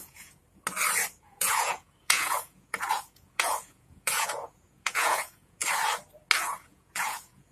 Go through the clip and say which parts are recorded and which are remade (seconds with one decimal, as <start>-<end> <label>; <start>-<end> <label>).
0.0-0.4 remade; 0.4-1.2 recorded; 1.2-5.6 remade; 5.6-6.4 recorded; 6.4-7.5 remade